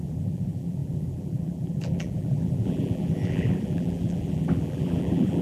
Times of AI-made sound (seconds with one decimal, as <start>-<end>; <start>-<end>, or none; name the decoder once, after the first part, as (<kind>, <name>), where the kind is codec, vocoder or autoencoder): 0.0-5.4 (vocoder, BigVGAN v2)